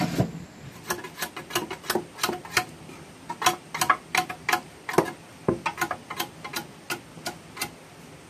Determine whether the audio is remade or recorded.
recorded